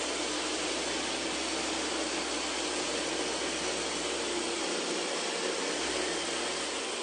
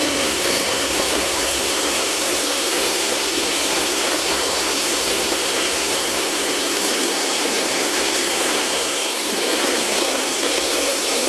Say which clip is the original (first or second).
first